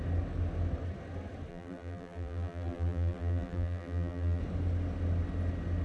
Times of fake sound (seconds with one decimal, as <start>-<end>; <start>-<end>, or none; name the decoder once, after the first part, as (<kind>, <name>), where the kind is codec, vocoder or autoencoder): 1.5-4.4 (vocoder, BigVGAN v2)